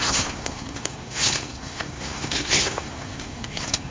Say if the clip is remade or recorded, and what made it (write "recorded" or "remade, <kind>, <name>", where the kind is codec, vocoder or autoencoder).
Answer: remade, codec, SNAC